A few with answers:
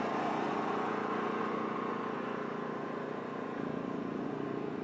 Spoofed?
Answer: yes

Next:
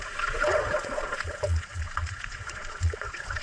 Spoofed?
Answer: yes